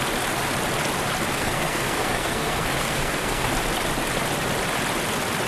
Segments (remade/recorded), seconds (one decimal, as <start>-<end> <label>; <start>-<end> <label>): 0.0-1.3 recorded; 1.3-3.5 remade; 3.5-5.5 recorded